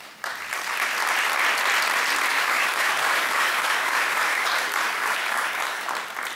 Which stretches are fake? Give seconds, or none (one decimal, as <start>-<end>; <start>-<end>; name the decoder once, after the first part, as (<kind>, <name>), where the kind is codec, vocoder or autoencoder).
2.3-5.9 (codec, DAC)